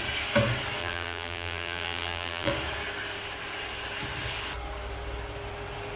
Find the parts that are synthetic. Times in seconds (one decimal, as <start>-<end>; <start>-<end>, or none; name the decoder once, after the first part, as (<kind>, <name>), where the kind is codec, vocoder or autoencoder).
0.8-2.5 (vocoder, BigVGAN v2)